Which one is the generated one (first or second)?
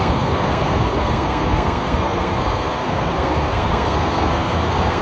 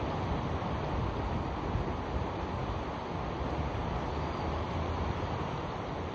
first